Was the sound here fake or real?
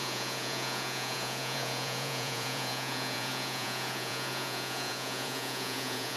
fake